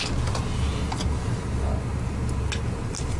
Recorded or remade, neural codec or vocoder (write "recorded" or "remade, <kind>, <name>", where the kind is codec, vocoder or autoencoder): recorded